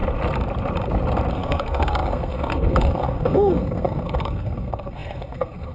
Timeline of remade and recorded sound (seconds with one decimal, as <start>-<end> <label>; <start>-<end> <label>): 0.0-1.3 recorded; 1.3-5.7 remade